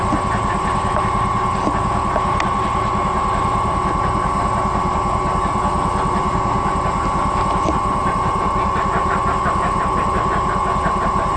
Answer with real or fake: real